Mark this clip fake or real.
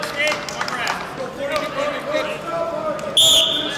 real